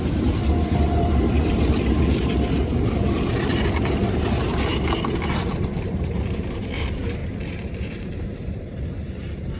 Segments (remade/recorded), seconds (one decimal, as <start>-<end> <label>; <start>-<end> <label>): 0.0-7.2 remade; 7.2-7.8 recorded; 7.8-9.6 remade